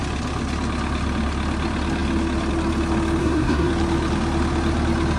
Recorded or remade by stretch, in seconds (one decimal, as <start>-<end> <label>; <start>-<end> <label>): 0.0-3.2 recorded; 3.2-3.7 remade; 3.7-5.2 recorded